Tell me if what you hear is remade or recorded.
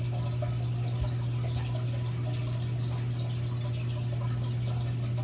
recorded